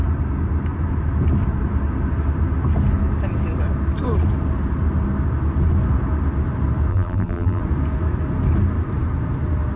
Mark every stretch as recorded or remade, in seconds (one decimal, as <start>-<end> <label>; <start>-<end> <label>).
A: 0.0-6.9 recorded; 6.9-7.6 remade; 7.6-9.8 recorded